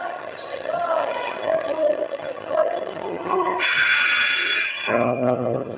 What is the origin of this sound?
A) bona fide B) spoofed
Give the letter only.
B